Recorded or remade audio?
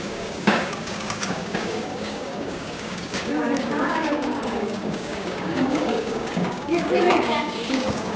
remade